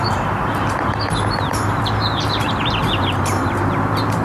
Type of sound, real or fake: fake